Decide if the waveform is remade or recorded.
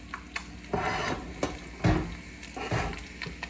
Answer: recorded